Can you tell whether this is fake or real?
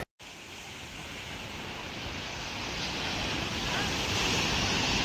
real